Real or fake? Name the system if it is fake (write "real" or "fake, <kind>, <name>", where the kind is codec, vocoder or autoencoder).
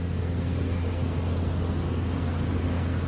fake, codec, SNAC